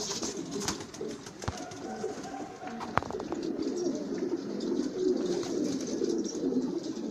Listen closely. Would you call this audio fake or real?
real